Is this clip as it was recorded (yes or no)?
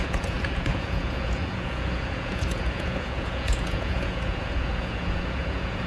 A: no